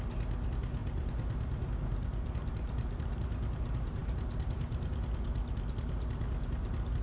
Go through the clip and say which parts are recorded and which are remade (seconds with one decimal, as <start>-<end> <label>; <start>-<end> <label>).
0.0-7.0 recorded